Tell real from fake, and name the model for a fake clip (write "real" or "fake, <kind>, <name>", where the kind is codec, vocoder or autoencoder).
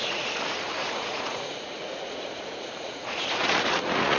fake, vocoder, Vocos